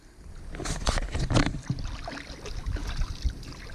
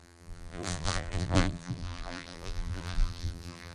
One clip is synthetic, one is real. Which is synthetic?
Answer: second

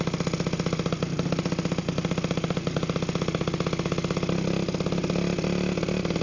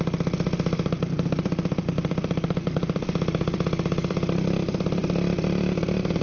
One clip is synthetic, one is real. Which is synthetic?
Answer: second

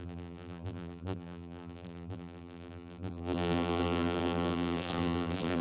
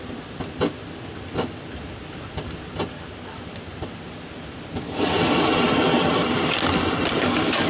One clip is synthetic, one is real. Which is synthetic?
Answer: first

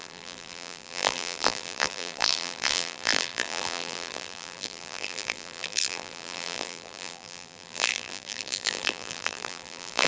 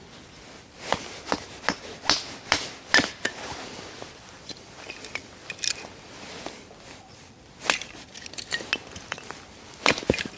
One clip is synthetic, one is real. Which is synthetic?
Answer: first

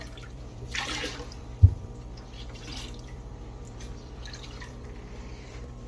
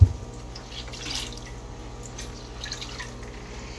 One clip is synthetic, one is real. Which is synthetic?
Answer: first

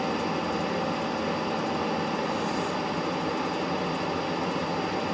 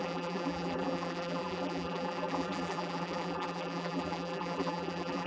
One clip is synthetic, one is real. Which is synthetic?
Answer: second